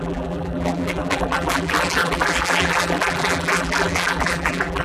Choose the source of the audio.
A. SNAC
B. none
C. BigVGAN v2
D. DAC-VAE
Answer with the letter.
C